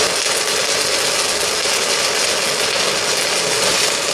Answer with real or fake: real